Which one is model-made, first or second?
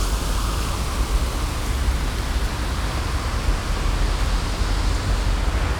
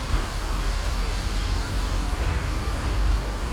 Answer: second